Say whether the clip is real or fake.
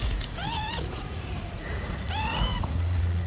fake